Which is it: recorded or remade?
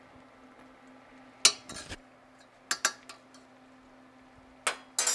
recorded